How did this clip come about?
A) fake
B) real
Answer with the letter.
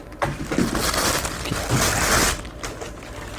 B